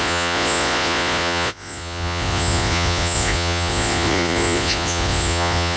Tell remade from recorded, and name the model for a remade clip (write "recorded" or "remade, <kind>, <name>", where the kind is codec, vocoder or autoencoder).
remade, vocoder, Vocos